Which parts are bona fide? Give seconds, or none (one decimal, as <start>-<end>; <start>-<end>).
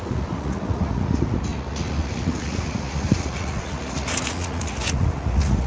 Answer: none